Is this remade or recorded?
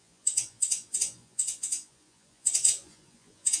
remade